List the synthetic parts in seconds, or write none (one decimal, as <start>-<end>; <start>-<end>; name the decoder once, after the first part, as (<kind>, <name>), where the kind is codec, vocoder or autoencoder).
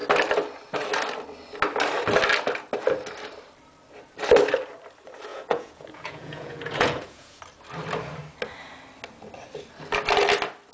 5.3-7.4 (vocoder, Vocos)